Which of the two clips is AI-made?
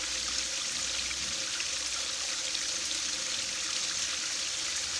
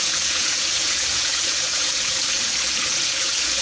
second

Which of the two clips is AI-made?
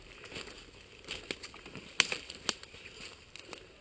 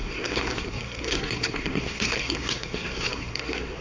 second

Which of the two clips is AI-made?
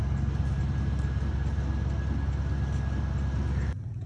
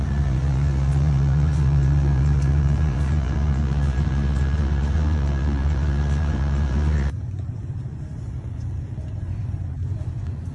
second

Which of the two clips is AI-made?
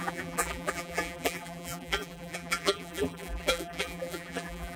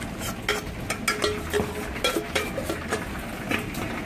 first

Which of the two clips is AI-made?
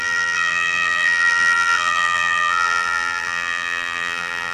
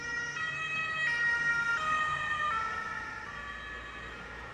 first